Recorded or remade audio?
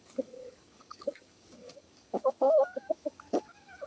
remade